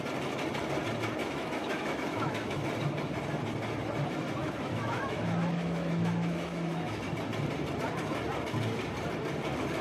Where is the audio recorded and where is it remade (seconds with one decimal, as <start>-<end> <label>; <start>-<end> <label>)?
0.0-1.2 recorded; 1.2-2.7 remade; 2.7-4.4 recorded; 4.4-7.0 remade; 7.0-9.8 recorded